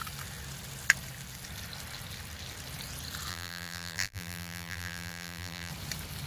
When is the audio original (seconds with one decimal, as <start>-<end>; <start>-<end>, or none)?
0.0-3.3; 5.7-6.3